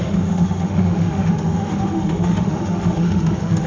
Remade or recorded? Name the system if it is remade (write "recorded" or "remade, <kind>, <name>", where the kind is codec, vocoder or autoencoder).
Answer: remade, autoencoder, DAC-VAE